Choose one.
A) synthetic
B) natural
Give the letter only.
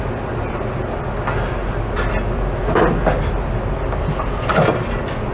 B